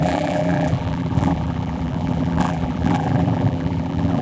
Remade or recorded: remade